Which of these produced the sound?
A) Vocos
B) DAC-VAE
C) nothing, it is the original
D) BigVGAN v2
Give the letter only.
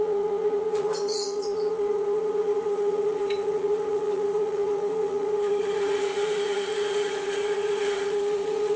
A